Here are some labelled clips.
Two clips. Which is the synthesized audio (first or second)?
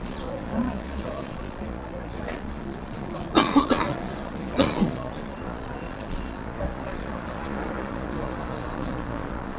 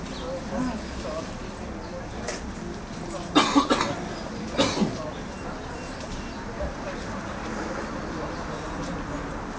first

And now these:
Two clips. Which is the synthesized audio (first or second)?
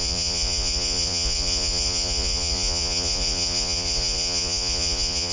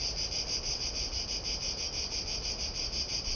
first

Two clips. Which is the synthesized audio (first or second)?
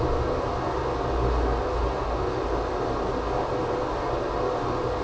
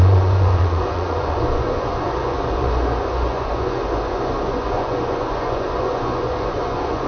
second